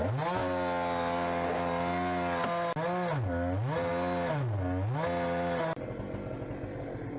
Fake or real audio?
real